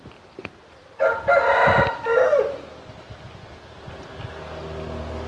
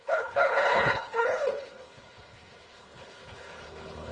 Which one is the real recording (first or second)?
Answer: first